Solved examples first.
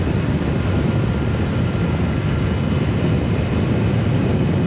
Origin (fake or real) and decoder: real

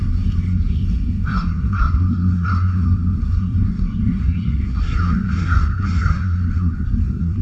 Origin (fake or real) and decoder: fake, codec, SNAC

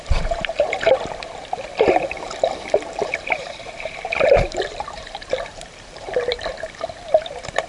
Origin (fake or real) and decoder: fake, vocoder, BigVGAN v2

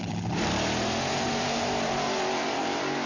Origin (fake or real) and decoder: fake, vocoder, BigVGAN v2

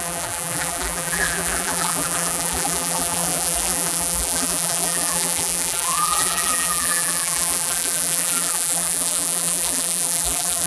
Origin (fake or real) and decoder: fake, vocoder, BigVGAN v2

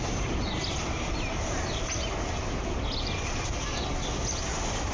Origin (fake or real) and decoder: real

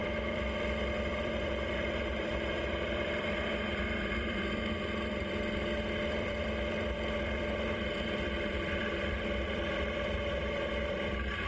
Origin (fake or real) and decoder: fake, vocoder, BigVGAN v2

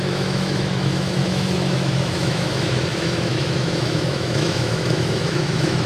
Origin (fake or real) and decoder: fake, autoencoder, DAC-VAE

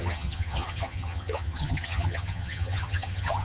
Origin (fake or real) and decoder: fake, vocoder, HiFi-GAN